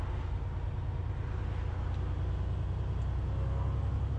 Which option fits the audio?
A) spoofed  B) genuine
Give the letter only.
B